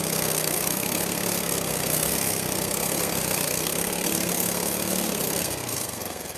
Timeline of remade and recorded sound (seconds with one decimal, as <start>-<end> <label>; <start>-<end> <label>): 0.0-6.4 remade